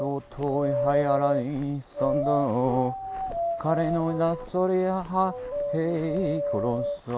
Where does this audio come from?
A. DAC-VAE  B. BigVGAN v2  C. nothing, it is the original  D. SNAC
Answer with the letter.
C